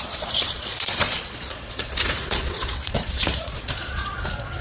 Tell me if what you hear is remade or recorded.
remade